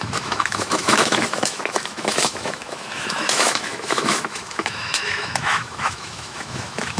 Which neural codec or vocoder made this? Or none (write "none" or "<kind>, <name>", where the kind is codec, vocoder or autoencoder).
autoencoder, DAC-VAE